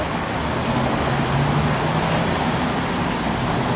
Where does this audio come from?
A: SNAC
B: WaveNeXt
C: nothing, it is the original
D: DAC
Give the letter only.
C